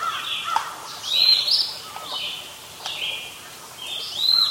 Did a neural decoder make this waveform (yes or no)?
no